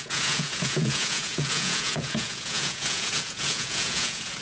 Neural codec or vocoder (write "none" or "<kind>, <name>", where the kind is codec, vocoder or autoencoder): vocoder, Vocos